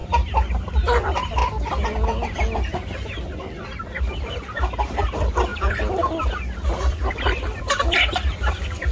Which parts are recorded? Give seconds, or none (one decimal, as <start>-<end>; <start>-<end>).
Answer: 1.4-4.0